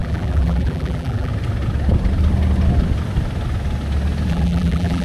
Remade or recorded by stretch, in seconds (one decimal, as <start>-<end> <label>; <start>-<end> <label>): 0.0-1.3 remade; 1.3-4.3 recorded; 4.3-5.0 remade